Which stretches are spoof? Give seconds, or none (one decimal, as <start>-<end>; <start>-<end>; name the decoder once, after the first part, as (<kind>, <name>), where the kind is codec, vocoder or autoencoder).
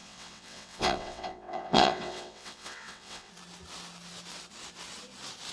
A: 0.0-3.3 (vocoder, WaveNeXt)